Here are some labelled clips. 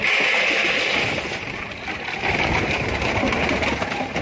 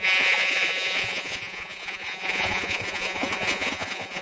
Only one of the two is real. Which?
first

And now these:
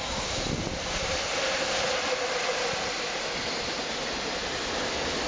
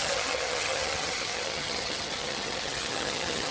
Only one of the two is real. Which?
first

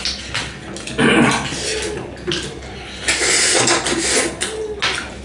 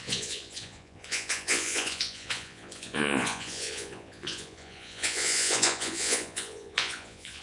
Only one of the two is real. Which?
first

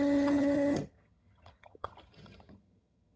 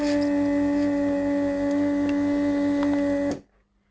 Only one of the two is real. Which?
second